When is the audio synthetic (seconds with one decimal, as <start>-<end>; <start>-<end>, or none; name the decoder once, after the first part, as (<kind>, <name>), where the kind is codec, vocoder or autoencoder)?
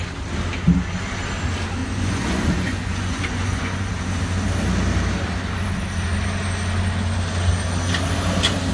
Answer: 1.8-3.9 (vocoder, Vocos)